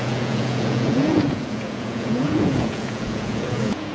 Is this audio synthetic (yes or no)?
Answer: yes